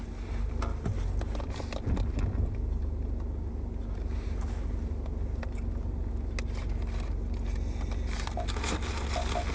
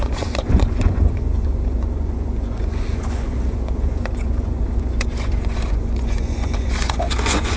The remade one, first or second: second